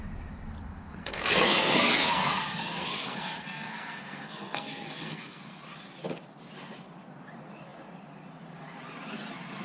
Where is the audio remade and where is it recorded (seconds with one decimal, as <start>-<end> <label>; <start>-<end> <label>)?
0.0-1.0 recorded; 1.0-5.6 remade; 5.6-9.6 recorded

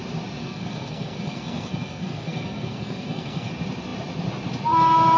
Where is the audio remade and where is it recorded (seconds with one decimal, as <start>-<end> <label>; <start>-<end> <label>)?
0.0-0.4 recorded; 0.4-3.5 remade; 3.5-5.2 recorded

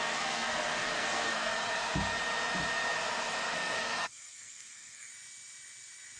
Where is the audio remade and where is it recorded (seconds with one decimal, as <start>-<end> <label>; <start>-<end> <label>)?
0.0-1.5 remade; 1.5-3.5 recorded; 3.5-5.1 remade; 5.1-6.2 recorded